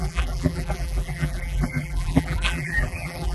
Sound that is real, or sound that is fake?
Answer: fake